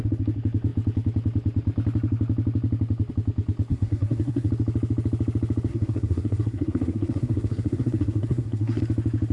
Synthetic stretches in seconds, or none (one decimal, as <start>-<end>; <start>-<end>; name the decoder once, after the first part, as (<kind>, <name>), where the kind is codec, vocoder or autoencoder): 3.7-4.5 (codec, SNAC); 5.7-8.8